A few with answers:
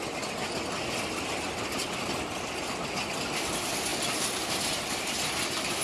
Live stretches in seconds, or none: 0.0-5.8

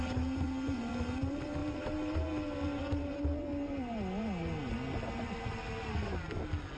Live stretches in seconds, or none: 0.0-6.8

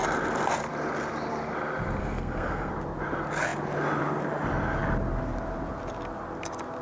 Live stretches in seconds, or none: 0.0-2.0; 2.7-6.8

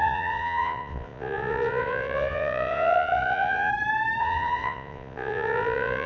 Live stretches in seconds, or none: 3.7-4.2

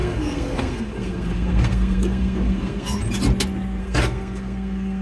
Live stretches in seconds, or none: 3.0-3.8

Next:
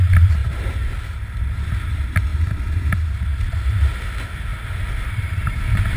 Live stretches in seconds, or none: 0.0-0.4; 1.7-2.3; 2.9-3.3; 3.9-4.5

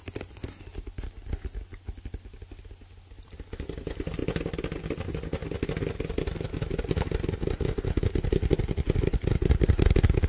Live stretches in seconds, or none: 0.7-3.1; 4.2-4.8; 5.4-10.3

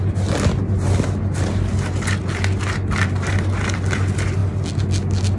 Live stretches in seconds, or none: 0.0-5.4